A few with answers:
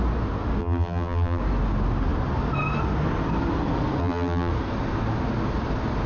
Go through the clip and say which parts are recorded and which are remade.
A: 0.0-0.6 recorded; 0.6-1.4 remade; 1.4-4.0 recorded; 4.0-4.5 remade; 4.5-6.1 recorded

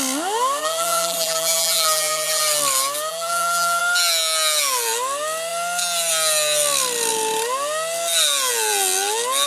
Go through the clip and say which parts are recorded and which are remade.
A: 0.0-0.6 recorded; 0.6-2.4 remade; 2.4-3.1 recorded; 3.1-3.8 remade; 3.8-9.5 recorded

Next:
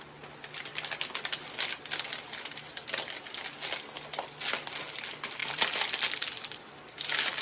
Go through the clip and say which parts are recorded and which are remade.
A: 0.0-5.4 recorded; 5.4-6.7 remade; 6.7-7.4 recorded

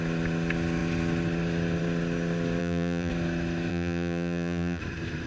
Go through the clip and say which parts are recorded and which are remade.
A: 0.0-2.6 recorded; 2.6-3.1 remade; 3.1-3.7 recorded; 3.7-4.8 remade; 4.8-5.3 recorded

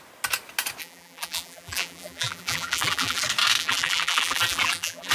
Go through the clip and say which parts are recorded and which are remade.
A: 0.0-0.8 recorded; 0.8-3.2 remade; 3.2-3.6 recorded; 3.6-5.1 remade